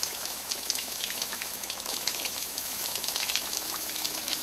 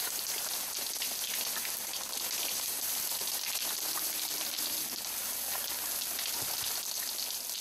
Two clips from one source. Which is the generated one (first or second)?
first